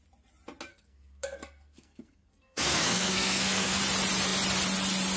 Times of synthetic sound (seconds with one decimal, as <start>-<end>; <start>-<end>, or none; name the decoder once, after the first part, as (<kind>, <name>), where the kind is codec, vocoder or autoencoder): 0.7-3.8 (codec, SNAC)